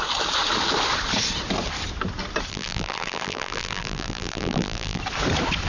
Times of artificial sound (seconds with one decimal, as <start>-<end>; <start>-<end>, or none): 2.5-5.0